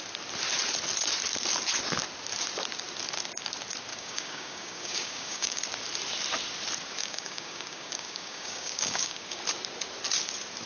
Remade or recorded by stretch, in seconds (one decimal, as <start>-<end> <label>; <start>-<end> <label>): 0.0-3.9 recorded; 3.9-5.6 remade; 5.6-7.0 recorded; 7.0-9.4 remade; 9.4-10.7 recorded